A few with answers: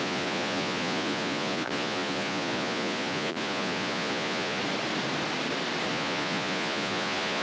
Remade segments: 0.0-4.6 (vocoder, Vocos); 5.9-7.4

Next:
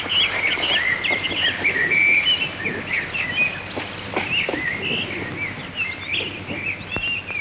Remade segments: none

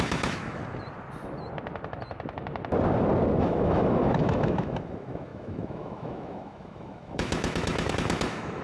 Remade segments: 0.0-0.6 (autoencoder, DAC-VAE); 3.4-8.6